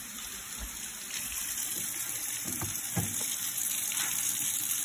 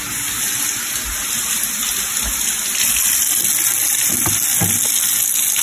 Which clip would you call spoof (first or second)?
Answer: first